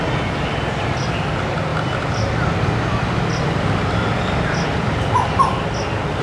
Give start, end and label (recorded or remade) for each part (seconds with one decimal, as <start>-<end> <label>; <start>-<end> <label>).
0.0-6.2 recorded